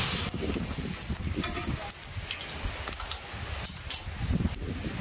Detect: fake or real real